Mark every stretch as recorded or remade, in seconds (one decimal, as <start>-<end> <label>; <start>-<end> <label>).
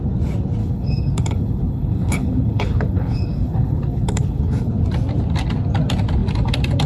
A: 0.0-0.6 recorded; 0.6-4.7 remade; 4.7-6.9 recorded